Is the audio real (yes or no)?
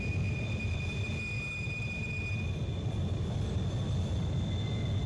yes